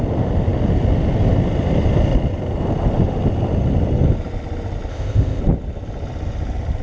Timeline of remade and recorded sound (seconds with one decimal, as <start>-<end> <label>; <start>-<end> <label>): 0.0-4.9 recorded; 4.9-5.4 remade; 5.4-6.8 recorded